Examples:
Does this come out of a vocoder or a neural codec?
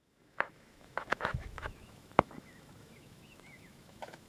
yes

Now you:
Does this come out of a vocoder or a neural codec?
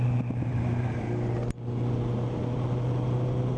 no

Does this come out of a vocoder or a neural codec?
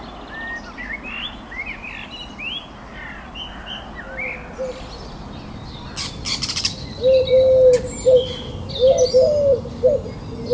no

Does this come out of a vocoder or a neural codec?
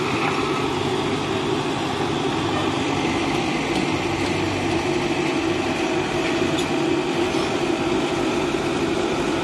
no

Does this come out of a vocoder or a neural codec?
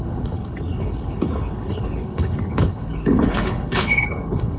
yes